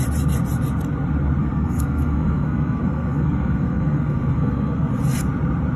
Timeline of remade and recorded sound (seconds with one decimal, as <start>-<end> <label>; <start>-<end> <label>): 0.0-1.4 recorded; 1.4-4.9 remade; 4.9-5.8 recorded